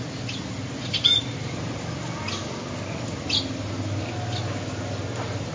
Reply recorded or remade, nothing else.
recorded